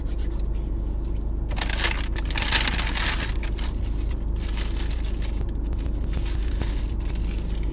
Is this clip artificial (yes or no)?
no